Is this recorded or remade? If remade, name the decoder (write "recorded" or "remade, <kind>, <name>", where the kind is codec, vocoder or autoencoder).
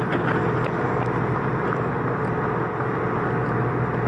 recorded